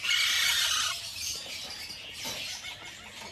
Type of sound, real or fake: real